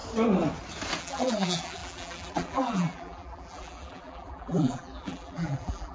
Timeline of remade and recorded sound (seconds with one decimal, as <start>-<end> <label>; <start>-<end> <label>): 0.0-1.0 recorded; 1.0-5.9 remade